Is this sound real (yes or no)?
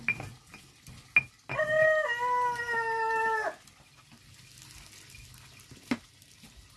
yes